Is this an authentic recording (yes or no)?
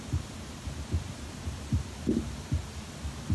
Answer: yes